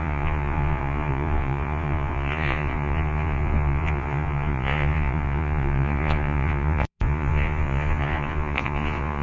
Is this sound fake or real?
fake